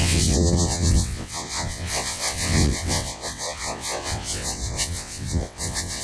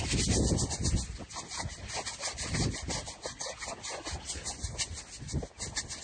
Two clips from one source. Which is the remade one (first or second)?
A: first